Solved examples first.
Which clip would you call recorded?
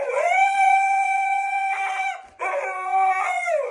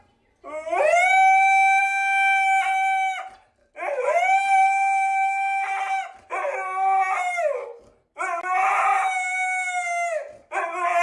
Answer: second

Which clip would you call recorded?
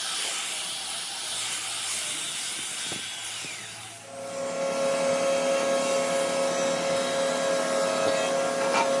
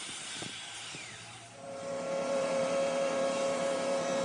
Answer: first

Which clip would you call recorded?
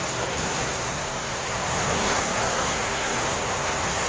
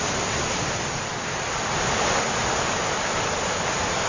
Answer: second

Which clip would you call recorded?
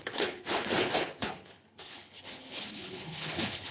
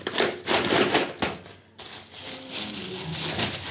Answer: second